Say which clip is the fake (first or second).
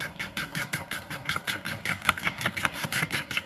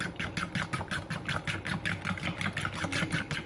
first